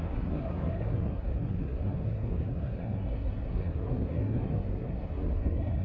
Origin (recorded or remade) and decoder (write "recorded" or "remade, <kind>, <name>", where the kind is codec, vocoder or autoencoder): remade, codec, SNAC